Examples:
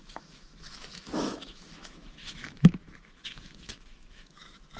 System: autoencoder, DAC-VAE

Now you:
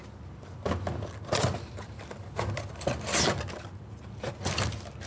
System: none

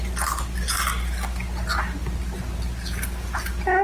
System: none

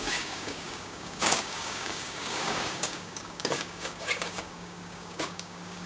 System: codec, DAC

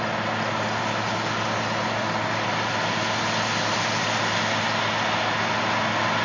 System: none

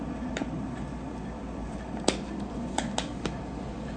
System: none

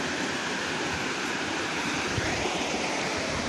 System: vocoder, BigVGAN v2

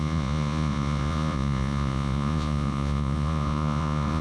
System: vocoder, Vocos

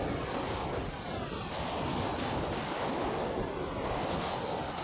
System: none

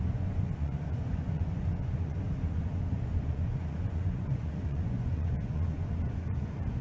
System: vocoder, Vocos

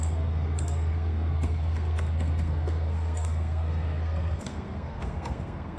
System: codec, SNAC